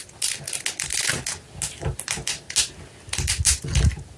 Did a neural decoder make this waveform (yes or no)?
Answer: no